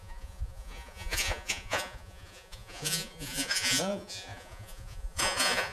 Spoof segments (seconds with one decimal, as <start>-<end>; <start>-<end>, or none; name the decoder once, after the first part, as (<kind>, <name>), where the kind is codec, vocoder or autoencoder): 0.0-5.7 (vocoder, Vocos)